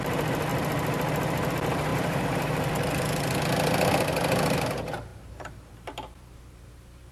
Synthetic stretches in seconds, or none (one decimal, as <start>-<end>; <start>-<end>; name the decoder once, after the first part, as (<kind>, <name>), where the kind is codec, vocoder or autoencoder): 1.9-2.7 (vocoder, BigVGAN v2); 5.1-7.1